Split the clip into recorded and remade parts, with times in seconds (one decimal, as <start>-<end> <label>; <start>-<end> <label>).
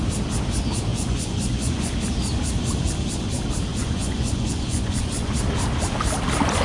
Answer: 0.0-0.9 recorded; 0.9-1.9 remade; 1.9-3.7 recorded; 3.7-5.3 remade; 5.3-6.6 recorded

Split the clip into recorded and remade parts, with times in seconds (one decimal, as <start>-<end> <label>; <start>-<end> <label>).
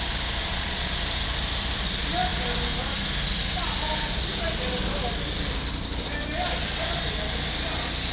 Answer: 0.0-0.4 recorded; 0.4-0.9 remade; 0.9-8.1 recorded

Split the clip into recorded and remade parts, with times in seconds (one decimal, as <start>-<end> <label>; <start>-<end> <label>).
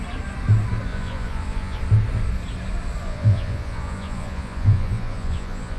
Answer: 0.0-0.9 recorded; 0.9-1.8 remade; 1.8-3.0 recorded; 3.0-5.8 remade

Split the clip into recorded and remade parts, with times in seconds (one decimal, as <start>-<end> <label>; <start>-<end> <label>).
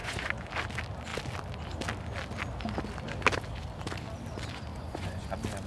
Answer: 0.0-0.5 remade; 0.5-4.7 recorded; 4.7-5.3 remade; 5.3-5.7 recorded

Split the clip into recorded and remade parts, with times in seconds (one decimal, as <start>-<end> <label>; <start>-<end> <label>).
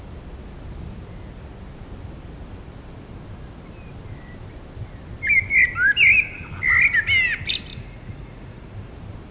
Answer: 0.0-7.7 recorded; 7.7-8.9 remade; 8.9-9.3 recorded